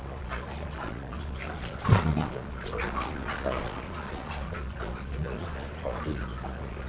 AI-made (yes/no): yes